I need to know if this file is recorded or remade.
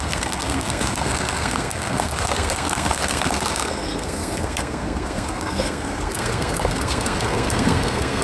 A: remade